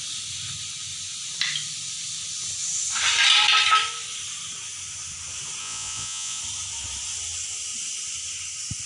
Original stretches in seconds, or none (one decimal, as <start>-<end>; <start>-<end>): 0.0-5.6; 6.4-8.9